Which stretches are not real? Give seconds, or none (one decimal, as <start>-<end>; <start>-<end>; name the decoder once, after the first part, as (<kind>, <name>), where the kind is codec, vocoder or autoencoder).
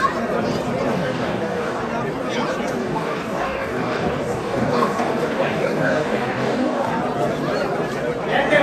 0.9-1.8 (codec, DAC); 2.8-6.9